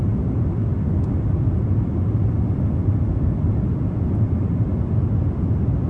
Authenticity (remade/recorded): recorded